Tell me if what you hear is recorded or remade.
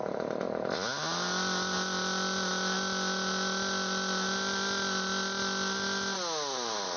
recorded